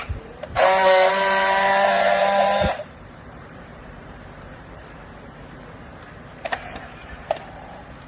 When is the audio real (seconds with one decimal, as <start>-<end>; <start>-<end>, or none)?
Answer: 4.8-6.5